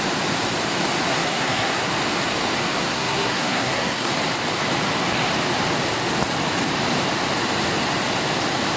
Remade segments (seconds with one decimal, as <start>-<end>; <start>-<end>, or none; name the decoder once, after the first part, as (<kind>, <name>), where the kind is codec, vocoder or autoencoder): 1.1-1.9 (codec, SNAC); 2.8-4.1